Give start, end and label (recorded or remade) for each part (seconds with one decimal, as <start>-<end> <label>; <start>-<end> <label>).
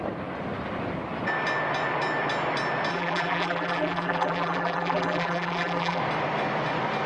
0.0-2.9 recorded; 2.9-6.0 remade; 6.0-7.1 recorded